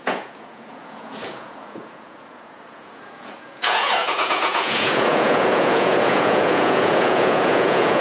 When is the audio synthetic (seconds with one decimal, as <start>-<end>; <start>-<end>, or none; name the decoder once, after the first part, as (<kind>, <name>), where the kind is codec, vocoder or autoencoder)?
0.0-8.0 (vocoder, Vocos)